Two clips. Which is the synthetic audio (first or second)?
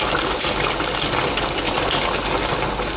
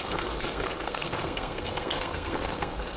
second